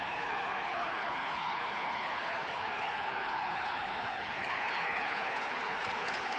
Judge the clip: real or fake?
fake